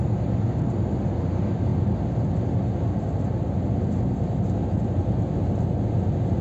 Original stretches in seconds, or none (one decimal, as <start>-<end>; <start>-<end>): 0.0-6.4